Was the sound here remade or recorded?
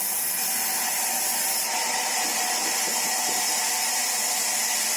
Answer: recorded